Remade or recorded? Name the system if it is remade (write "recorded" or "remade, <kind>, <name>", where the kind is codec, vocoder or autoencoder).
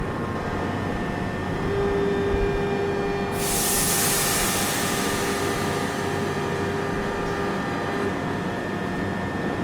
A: recorded